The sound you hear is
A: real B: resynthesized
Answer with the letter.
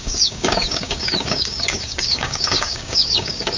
B